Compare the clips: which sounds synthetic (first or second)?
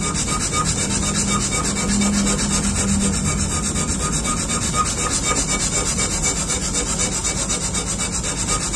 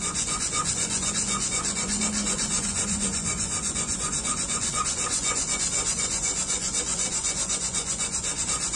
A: second